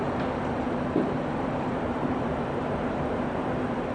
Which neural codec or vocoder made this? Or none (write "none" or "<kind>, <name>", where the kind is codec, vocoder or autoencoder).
vocoder, BigVGAN v2